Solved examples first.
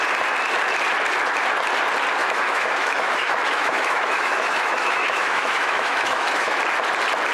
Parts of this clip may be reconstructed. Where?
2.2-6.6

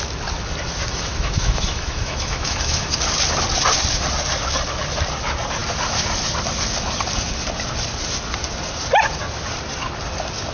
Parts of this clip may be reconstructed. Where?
0.9-3.0

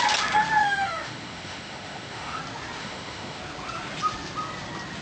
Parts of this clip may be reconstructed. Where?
0.6-2.4; 2.8-3.4